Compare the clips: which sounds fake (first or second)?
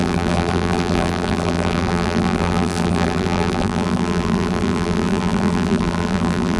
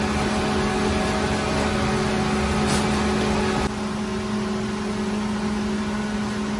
first